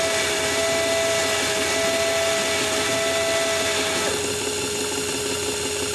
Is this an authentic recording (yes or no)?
yes